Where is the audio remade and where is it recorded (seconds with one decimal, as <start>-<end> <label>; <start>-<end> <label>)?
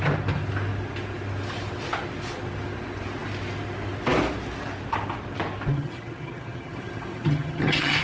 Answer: 0.0-5.7 recorded; 5.7-8.0 remade